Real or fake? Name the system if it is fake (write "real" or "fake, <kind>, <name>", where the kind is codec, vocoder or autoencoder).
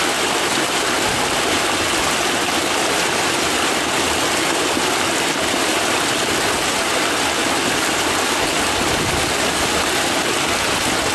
real